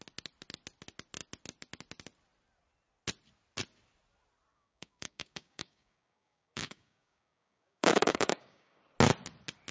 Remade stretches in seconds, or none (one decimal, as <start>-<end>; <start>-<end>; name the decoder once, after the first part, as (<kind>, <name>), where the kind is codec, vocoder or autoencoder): 4.5-8.8 (codec, DAC)

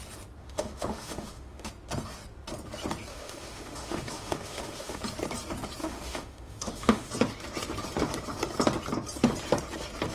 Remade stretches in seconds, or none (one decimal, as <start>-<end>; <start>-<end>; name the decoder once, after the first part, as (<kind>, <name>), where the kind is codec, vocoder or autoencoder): 0.4-1.7 (autoencoder, DAC-VAE); 3.1-5.0; 5.8-7.1

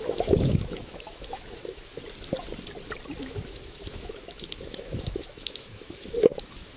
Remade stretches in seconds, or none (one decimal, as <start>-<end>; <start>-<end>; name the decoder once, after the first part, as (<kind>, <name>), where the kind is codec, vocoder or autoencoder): 0.0-1.9 (autoencoder, DAC-VAE); 3.2-6.8

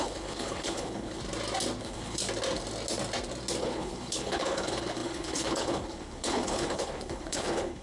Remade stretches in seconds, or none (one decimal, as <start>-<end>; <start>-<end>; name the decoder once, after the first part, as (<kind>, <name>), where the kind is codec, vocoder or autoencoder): 0.0-1.2 (codec, HILCodec); 1.8-2.2; 3.6-7.8

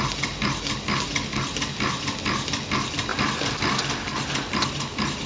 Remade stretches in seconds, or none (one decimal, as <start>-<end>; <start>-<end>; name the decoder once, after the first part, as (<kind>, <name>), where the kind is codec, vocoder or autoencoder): none